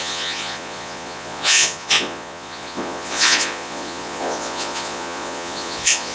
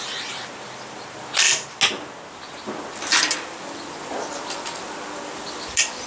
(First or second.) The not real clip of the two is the first